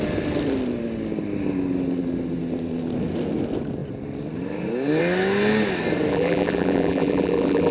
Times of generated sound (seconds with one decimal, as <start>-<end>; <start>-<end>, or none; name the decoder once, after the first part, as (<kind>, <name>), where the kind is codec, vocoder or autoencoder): 6.1-7.7 (vocoder, BigVGAN v2)